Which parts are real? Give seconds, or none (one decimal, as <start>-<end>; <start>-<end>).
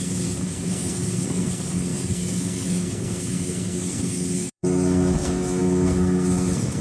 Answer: none